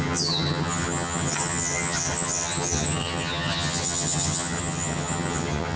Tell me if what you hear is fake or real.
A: fake